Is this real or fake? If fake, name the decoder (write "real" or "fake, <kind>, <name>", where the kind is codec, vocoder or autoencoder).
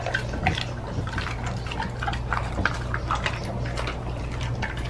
real